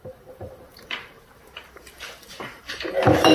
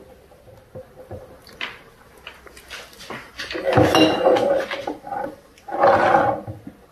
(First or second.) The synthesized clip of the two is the first